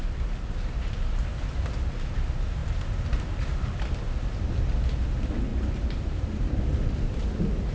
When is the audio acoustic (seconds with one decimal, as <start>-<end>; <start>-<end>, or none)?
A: 0.0-7.7